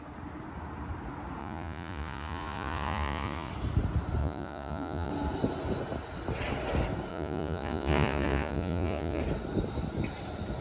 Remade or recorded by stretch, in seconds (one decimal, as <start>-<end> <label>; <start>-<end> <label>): 0.0-1.4 recorded; 1.4-3.5 remade; 3.5-4.2 recorded; 4.2-5.1 remade; 5.1-7.1 recorded; 7.1-9.2 remade; 9.2-10.6 recorded